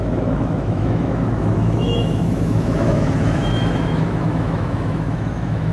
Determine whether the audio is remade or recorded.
remade